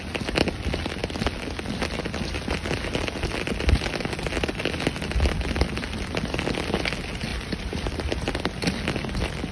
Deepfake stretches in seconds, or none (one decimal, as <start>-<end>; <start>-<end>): 7.3-8.3